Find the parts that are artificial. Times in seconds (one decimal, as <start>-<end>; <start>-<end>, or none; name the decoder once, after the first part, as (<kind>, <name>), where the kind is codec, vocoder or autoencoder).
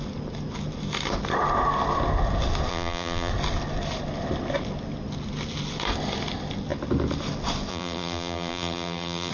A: 2.7-3.3 (vocoder, BigVGAN v2); 7.7-9.3